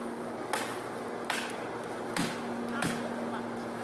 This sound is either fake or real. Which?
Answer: real